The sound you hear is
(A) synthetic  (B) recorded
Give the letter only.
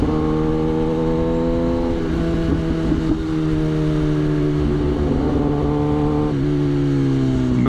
B